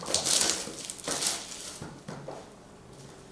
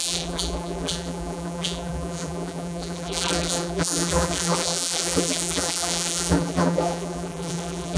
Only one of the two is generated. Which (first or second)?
second